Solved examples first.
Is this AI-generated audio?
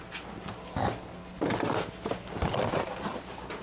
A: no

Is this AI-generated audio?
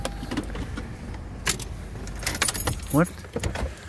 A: no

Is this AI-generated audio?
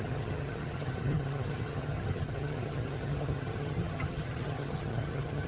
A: yes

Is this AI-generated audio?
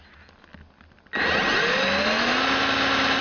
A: no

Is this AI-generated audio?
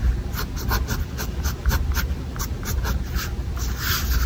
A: no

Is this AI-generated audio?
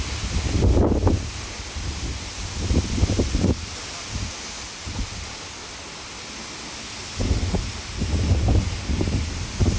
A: no